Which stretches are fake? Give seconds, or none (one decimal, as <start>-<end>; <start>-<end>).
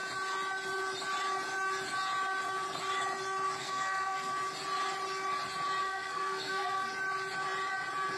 3.6-4.3; 5.8-6.9